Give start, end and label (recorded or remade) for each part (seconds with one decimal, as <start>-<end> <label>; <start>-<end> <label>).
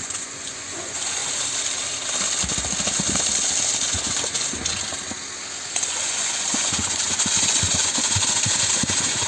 0.0-1.2 remade; 1.2-3.9 recorded; 3.9-4.9 remade; 4.9-5.7 recorded; 5.7-9.3 remade